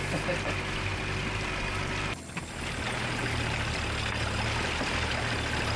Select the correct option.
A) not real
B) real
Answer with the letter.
B